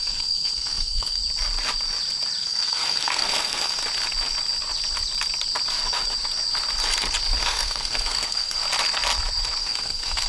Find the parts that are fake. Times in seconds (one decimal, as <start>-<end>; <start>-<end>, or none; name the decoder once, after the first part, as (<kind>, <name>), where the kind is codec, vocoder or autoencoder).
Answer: 0.0-1.2 (codec, SNAC); 2.4-3.8; 7.4-8.6; 9.6-10.3